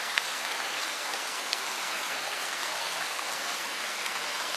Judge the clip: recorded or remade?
remade